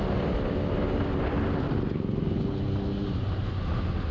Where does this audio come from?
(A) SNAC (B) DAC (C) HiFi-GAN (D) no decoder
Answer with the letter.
D